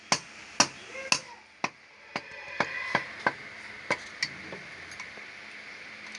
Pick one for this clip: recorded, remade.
recorded